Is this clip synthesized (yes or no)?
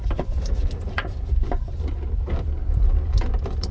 yes